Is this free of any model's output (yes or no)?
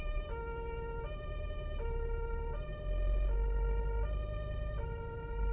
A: yes